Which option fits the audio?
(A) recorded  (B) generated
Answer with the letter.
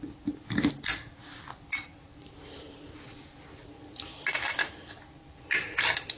A